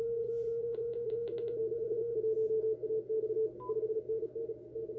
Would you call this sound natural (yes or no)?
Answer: yes